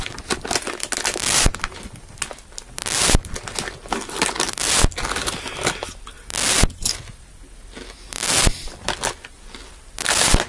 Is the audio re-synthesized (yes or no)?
no